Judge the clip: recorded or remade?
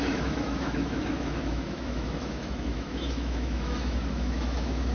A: remade